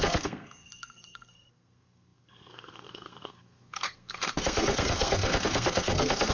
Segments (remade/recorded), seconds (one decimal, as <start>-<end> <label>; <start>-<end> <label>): 0.0-6.3 remade